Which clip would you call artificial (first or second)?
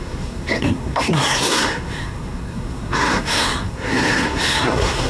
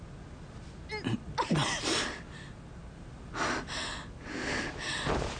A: first